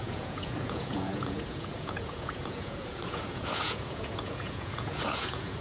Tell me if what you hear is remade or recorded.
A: remade